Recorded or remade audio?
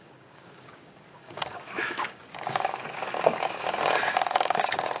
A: remade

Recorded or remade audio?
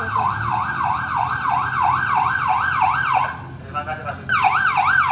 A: recorded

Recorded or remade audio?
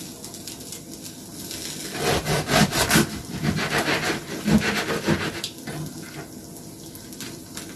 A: recorded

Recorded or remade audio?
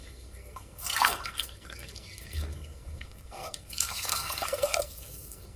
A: remade